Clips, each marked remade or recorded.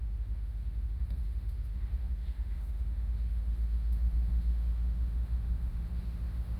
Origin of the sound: remade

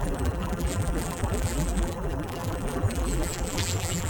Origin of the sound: remade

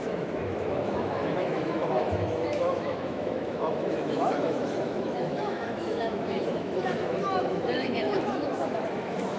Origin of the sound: remade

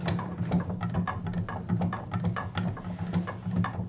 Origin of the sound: recorded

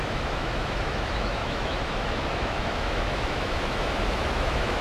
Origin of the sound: remade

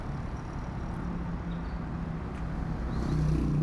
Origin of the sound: recorded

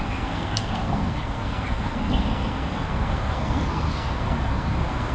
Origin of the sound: remade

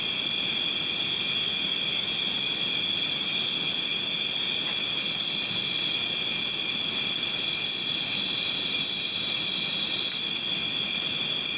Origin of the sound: recorded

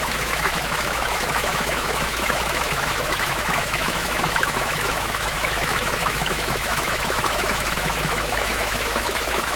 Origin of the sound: remade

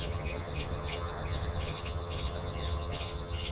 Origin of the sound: remade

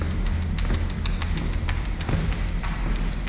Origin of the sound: recorded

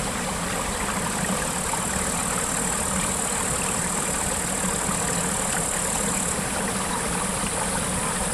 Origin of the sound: recorded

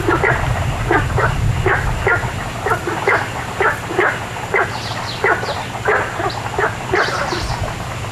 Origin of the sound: remade